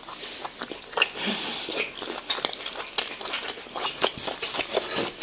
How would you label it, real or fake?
real